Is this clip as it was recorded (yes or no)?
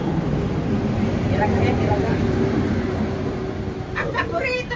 no